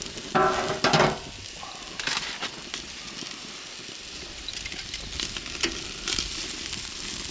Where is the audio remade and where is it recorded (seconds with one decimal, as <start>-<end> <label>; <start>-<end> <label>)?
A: 0.0-7.3 recorded